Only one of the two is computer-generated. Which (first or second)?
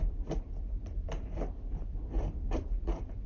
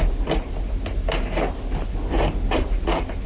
first